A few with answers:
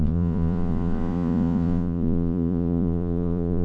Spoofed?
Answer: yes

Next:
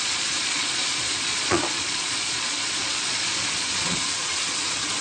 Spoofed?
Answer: yes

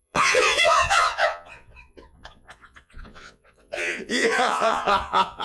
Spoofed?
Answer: yes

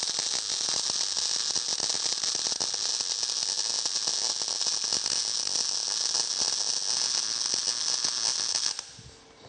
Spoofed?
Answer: no